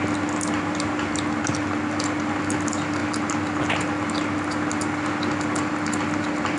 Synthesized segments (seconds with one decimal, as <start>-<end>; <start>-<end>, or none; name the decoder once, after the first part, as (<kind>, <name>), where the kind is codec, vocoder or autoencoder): none